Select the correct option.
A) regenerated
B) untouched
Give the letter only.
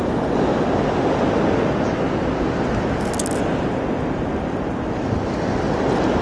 B